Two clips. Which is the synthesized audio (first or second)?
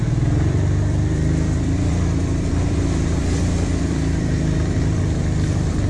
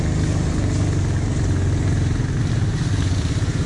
first